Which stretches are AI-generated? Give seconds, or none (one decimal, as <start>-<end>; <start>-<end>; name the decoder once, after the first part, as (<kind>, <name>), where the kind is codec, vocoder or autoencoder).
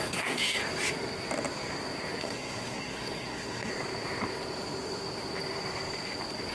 0.0-0.6 (codec, SNAC); 2.2-3.7